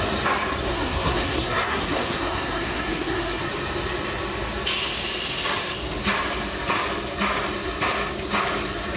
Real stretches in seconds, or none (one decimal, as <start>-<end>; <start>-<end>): 0.0-0.7; 3.4-9.0

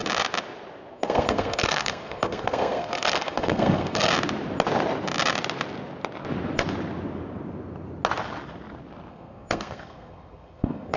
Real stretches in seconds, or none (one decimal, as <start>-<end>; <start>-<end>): 0.0-0.9; 4.1-9.1

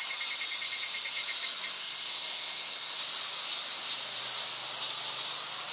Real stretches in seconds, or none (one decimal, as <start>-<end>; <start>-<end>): 0.0-1.8; 3.0-5.7

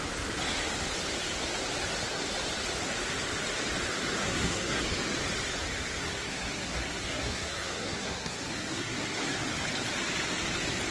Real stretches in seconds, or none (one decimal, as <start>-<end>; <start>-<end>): 0.0-4.2; 4.8-6.0; 9.4-10.9